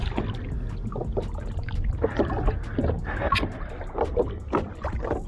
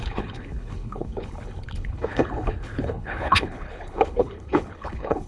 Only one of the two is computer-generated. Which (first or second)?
second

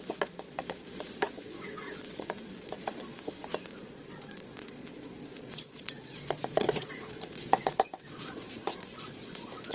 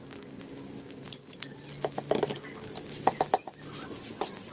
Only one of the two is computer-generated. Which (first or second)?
first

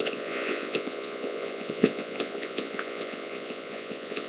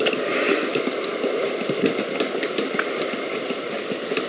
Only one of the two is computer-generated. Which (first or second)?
first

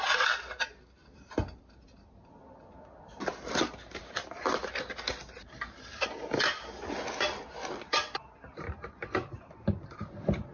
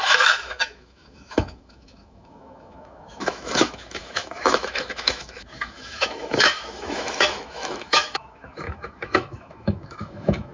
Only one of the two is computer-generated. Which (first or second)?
second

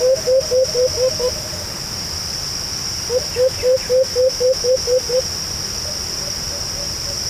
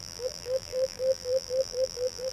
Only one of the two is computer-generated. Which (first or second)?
second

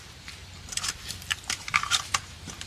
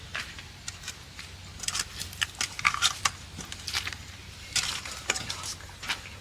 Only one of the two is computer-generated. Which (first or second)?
first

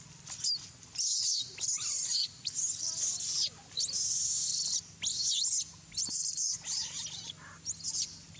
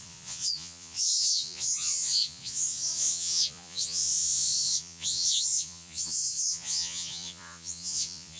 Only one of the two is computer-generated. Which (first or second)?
second